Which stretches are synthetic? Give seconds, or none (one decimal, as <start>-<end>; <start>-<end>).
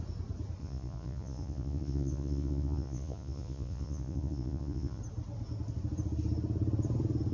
0.6-5.0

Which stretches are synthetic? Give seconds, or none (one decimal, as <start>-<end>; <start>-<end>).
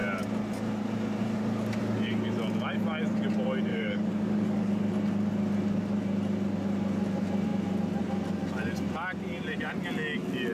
3.7-4.8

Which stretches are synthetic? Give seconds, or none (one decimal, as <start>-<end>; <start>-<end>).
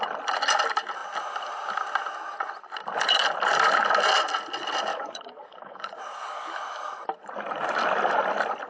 4.9-6.6